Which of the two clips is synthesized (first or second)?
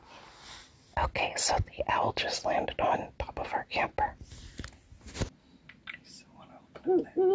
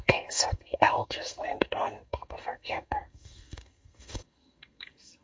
second